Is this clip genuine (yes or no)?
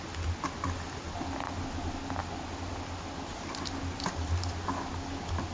yes